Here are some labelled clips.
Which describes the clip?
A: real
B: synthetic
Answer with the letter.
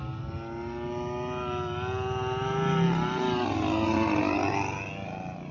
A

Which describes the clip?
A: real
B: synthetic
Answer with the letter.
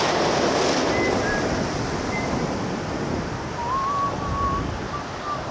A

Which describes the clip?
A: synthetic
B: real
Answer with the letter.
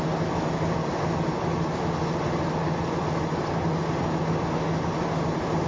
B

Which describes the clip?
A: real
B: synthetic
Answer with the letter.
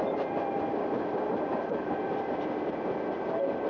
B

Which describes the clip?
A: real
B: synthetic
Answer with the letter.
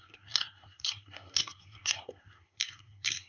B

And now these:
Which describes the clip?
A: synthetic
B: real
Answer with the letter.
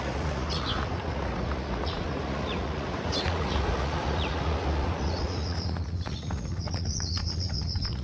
A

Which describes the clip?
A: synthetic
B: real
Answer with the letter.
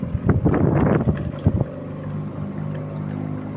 B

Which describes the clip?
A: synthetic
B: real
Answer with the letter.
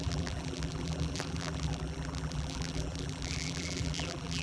A